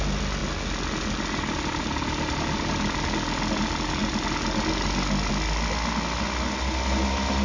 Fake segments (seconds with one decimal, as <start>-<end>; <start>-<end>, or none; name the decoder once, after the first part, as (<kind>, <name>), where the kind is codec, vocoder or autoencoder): none